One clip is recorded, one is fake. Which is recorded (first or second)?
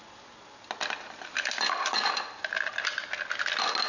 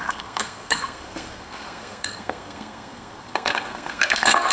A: first